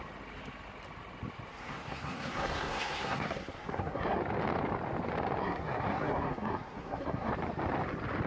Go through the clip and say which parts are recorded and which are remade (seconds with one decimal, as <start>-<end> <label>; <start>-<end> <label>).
0.0-1.5 recorded; 1.5-4.2 remade; 4.2-5.4 recorded; 5.4-7.3 remade; 7.3-8.3 recorded